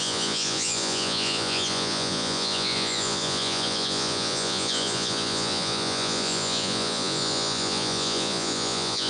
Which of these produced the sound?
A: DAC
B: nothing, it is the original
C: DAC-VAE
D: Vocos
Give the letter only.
D